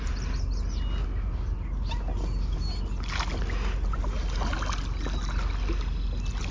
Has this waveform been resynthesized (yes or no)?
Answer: no